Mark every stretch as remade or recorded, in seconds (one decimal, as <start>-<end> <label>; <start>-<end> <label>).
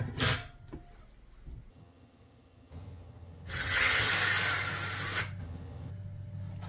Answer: 0.0-1.7 recorded; 1.7-4.1 remade; 4.1-5.4 recorded; 5.4-5.9 remade; 5.9-6.7 recorded